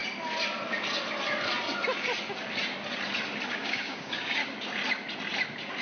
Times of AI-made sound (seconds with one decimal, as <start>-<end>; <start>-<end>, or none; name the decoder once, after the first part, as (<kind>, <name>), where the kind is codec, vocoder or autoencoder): 3.5-4.4 (codec, DAC)